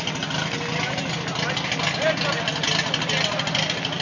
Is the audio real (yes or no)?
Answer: yes